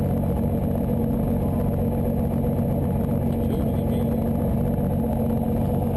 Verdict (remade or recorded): recorded